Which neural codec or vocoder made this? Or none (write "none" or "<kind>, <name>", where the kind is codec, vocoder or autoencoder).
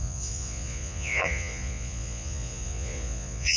vocoder, Vocos